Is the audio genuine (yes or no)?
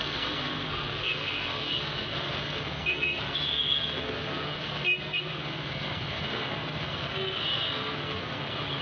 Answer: no